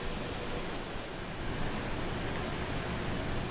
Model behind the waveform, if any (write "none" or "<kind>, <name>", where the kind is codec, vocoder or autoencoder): none